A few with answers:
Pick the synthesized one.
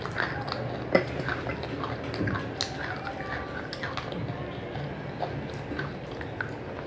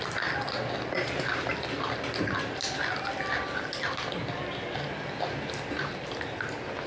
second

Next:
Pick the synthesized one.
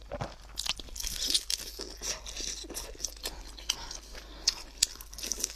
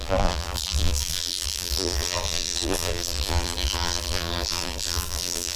second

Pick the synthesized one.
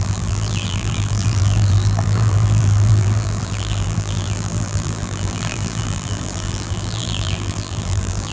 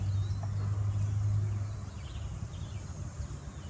first